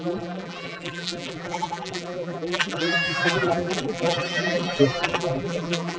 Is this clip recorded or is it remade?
remade